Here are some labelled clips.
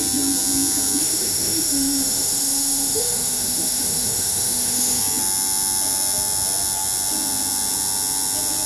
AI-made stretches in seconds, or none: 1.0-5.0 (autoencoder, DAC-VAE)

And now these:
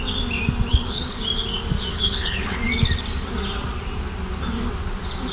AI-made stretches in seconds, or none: 0.7-1.2 (codec, HILCodec); 1.9-2.6

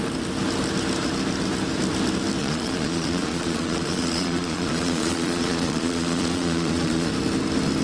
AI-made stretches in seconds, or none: 2.4-7.1 (vocoder, Vocos)